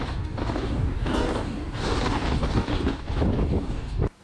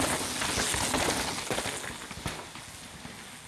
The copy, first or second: first